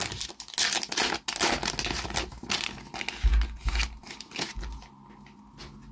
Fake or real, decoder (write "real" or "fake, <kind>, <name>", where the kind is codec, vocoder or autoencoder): real